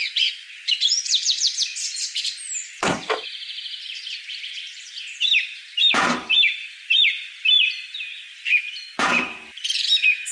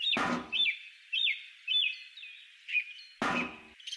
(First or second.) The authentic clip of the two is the second